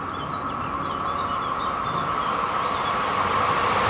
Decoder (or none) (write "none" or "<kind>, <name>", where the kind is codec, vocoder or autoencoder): none